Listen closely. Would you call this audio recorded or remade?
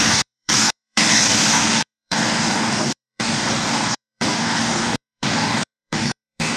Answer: remade